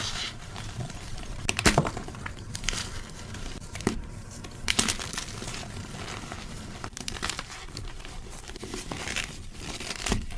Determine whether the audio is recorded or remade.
remade